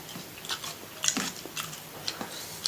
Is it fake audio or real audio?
real